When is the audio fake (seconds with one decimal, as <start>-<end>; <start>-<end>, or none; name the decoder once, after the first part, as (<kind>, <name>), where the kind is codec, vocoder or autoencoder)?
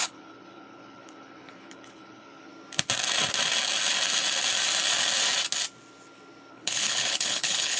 0.0-2.5 (codec, HILCodec); 6.5-7.8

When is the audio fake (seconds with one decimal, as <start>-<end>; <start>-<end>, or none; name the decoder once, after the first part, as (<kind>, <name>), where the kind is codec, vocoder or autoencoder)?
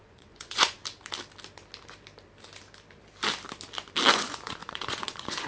0.0-0.8 (vocoder, Vocos); 4.1-5.5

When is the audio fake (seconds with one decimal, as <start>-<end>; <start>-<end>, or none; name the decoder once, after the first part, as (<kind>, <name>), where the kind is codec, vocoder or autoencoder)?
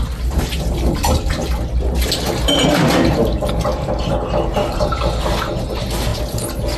none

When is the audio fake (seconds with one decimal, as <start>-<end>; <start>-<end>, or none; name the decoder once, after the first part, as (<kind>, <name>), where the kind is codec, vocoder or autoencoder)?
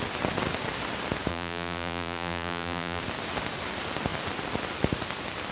1.3-3.0 (vocoder, BigVGAN v2)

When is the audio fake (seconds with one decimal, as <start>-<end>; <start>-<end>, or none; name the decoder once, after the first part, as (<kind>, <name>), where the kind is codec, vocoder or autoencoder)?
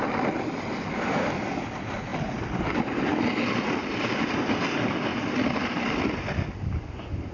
0.0-2.1 (vocoder, BigVGAN v2); 3.5-5.1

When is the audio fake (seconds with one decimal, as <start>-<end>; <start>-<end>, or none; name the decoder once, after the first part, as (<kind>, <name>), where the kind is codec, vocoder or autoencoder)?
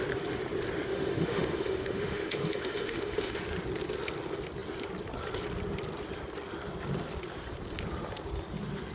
0.9-3.4 (autoencoder, DAC-VAE)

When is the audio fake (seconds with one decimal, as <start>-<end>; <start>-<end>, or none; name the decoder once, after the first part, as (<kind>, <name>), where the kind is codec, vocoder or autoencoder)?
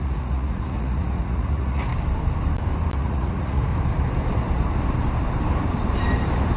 0.0-1.9 (vocoder, Vocos); 3.0-3.7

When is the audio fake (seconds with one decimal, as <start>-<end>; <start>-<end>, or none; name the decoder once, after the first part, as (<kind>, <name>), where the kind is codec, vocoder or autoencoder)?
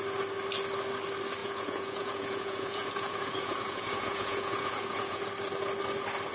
1.4-5.2 (vocoder, Vocos)